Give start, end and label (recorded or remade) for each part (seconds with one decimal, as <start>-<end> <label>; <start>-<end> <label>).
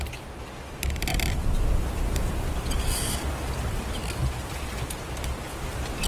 0.0-1.1 recorded; 1.1-4.8 remade; 4.8-6.1 recorded